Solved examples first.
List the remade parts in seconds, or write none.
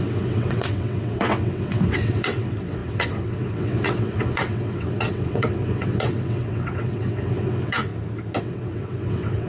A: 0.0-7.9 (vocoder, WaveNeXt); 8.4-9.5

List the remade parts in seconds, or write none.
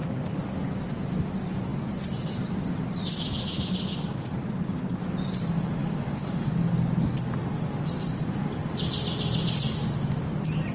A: 5.8-6.7 (codec, DAC)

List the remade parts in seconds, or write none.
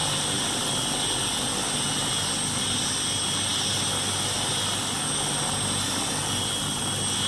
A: none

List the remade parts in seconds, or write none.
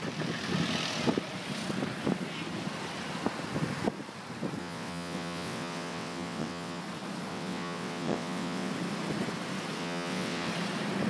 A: 4.6-6.8 (vocoder, WaveNeXt); 7.3-8.7; 9.8-10.5